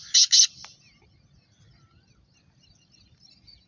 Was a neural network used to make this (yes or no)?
no